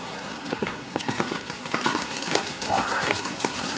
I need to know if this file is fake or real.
fake